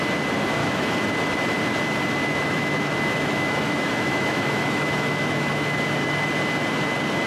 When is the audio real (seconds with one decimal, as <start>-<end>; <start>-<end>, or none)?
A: 0.0-0.6; 1.1-2.2; 5.8-7.3